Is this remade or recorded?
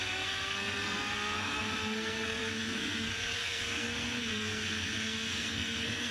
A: remade